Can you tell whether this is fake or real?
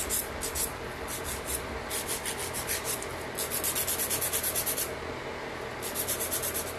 real